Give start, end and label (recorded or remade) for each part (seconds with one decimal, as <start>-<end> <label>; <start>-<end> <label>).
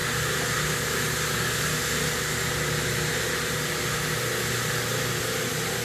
0.0-5.8 recorded